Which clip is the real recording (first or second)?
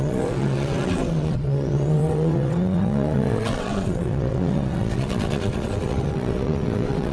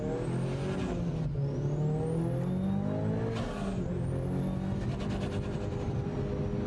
second